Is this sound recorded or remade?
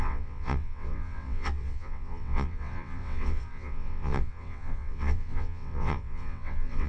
remade